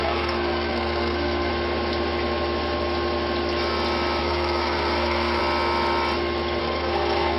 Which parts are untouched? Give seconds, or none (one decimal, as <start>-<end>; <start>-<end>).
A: 1.5-4.2; 5.4-6.6